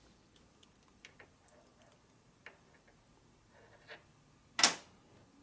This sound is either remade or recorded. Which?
recorded